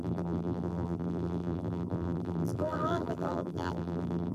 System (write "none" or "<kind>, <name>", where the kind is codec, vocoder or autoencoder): vocoder, BigVGAN v2